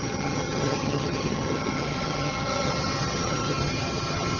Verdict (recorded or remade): remade